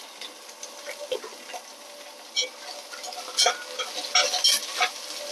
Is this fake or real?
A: real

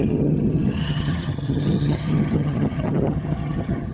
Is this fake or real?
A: fake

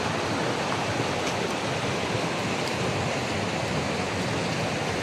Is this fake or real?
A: real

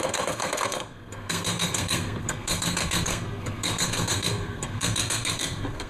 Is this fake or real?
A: fake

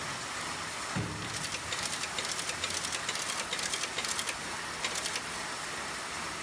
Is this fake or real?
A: real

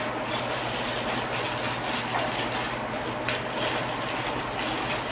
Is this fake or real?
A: real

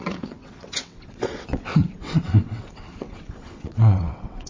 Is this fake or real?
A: fake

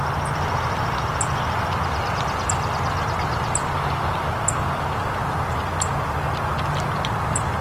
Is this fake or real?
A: real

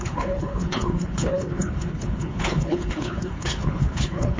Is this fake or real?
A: fake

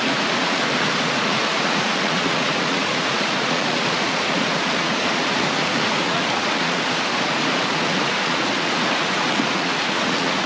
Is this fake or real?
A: fake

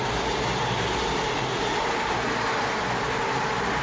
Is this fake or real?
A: real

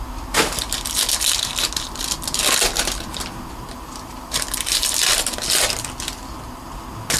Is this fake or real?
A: real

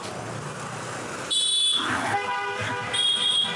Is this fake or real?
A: real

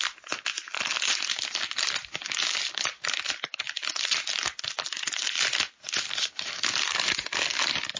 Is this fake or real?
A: real